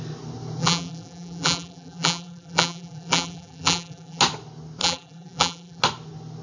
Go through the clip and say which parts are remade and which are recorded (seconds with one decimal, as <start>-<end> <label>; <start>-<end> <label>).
0.0-0.6 recorded; 0.6-4.2 remade; 4.2-4.8 recorded; 4.8-5.8 remade; 5.8-6.4 recorded